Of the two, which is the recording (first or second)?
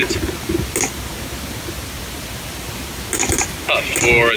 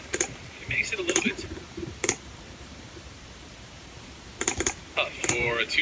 first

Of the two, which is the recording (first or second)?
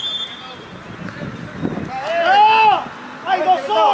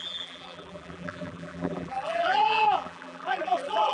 first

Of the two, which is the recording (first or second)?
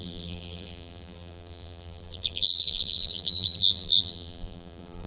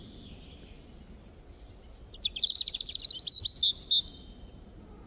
second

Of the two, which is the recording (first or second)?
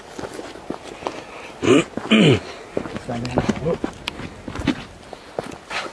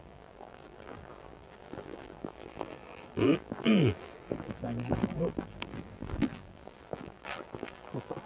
first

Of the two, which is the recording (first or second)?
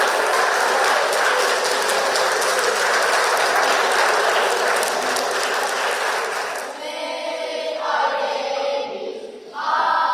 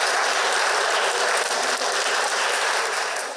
first